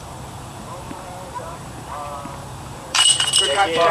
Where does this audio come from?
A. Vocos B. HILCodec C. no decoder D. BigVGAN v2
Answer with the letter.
D